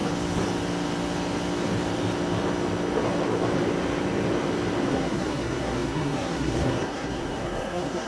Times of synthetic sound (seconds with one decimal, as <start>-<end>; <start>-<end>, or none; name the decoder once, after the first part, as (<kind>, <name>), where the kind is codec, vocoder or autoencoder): 4.9-8.1 (codec, SNAC)